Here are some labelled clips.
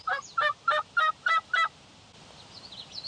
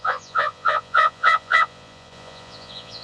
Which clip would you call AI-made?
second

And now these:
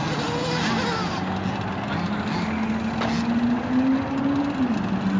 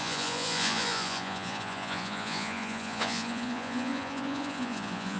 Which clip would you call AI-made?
second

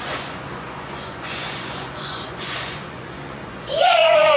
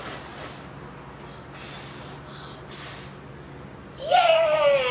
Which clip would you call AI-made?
first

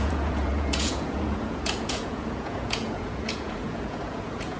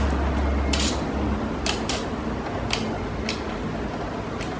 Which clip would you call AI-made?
first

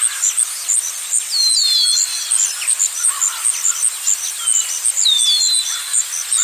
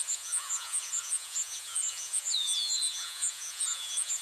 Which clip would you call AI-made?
second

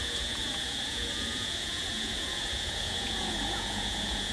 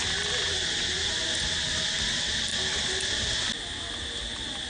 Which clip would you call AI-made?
first